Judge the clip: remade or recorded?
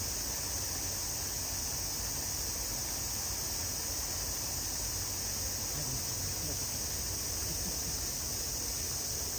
recorded